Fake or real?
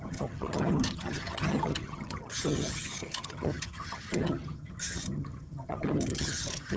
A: fake